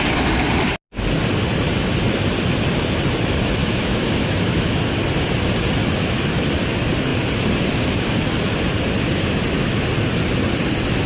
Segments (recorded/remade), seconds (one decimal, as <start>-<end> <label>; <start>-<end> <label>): 0.0-3.6 recorded; 3.6-4.8 remade; 4.8-11.1 recorded